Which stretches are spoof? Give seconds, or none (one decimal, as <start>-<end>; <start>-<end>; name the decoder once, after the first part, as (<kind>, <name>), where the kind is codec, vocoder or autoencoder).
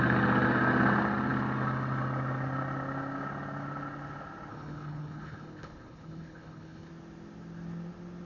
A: 4.5-6.9 (codec, HILCodec)